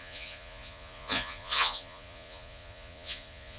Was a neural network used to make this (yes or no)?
yes